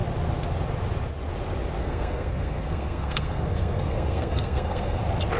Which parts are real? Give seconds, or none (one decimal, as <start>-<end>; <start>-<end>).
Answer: 0.0-1.8; 5.0-5.4